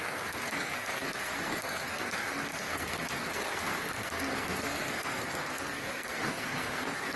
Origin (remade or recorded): remade